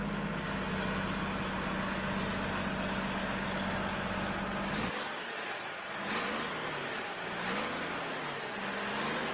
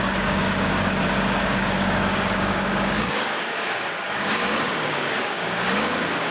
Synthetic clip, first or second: second